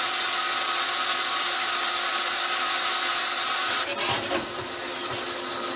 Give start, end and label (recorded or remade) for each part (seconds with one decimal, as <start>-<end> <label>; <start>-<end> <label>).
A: 0.0-5.8 recorded